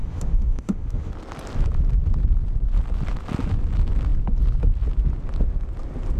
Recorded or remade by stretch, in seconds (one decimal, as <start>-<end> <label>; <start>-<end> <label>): 0.0-1.1 remade; 1.1-6.2 recorded